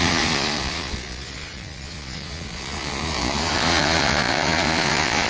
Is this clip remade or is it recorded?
remade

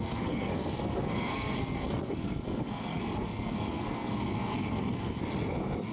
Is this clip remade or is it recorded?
remade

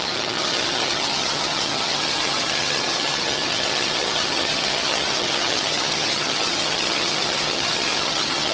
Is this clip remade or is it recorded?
remade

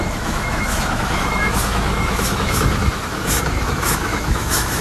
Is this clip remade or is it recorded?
remade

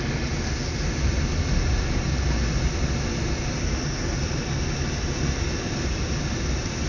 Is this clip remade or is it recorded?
recorded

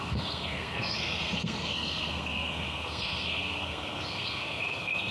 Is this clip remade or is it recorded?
remade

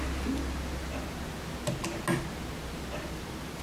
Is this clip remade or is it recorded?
recorded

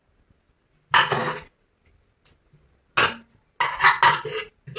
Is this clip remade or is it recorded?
recorded